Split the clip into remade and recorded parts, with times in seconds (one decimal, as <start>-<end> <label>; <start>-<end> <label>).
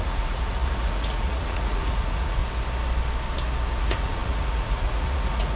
0.0-2.4 remade; 2.4-3.8 recorded; 3.8-5.6 remade